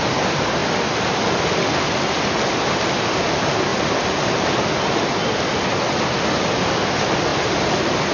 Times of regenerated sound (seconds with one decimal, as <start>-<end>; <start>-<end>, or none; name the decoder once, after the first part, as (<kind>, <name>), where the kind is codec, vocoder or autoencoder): 7.3-8.1 (vocoder, BigVGAN v2)